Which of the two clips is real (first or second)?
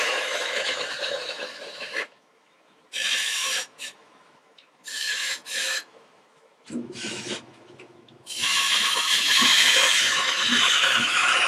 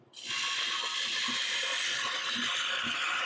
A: second